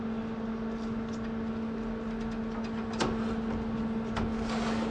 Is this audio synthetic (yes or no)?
no